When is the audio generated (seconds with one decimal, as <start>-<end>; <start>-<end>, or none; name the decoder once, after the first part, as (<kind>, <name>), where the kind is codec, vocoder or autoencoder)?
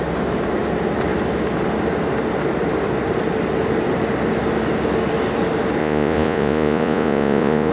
5.8-7.7 (vocoder, Vocos)